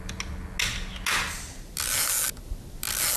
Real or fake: real